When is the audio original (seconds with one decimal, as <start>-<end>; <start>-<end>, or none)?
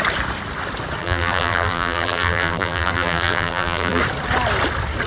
0.0-1.0; 4.0-5.1